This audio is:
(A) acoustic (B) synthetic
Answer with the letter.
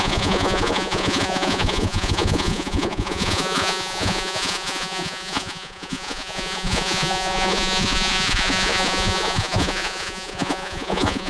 B